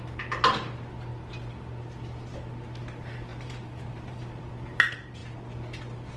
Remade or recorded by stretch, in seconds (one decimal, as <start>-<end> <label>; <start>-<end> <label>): 0.0-3.3 recorded; 3.3-4.5 remade; 4.5-6.2 recorded